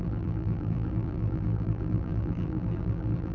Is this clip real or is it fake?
fake